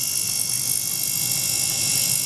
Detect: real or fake real